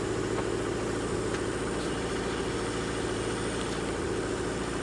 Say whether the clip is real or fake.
real